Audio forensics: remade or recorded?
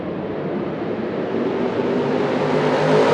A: recorded